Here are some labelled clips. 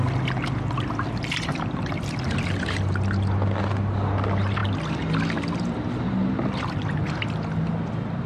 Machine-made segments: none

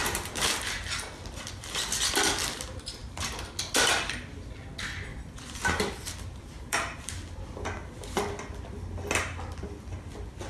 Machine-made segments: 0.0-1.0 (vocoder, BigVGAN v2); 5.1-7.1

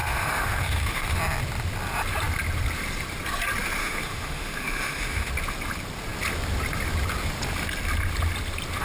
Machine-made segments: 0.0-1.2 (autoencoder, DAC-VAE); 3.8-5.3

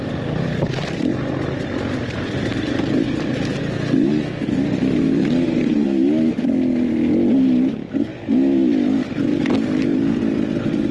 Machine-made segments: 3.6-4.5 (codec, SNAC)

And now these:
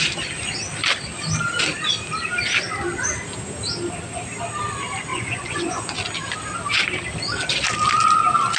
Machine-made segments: 5.1-5.9 (vocoder, Vocos)

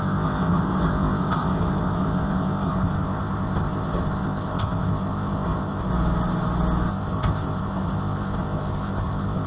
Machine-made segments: 0.0-5.9 (codec, ZipCodec); 6.9-9.5

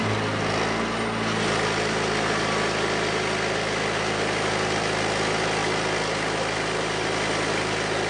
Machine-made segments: none

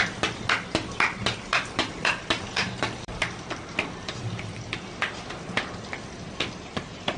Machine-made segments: 1.5-4.2 (vocoder, BigVGAN v2)